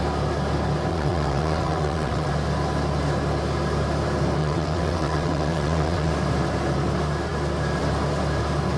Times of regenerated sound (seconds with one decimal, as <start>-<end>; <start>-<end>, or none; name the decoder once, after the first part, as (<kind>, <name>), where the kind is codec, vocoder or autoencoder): 0.9-2.3 (vocoder, WaveNeXt); 4.4-6.1